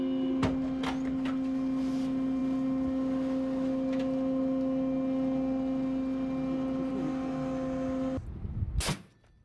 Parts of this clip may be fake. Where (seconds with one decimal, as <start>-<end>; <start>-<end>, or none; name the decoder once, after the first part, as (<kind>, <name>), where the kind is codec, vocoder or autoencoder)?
none